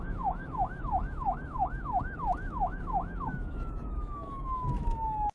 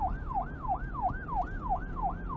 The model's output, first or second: first